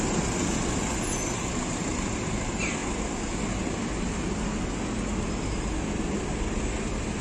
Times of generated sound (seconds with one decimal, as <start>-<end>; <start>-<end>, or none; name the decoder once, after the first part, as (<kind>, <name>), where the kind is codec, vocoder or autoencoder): none